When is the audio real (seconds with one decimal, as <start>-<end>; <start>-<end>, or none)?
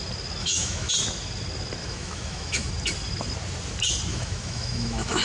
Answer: 0.0-0.4; 0.9-1.8; 2.7-4.1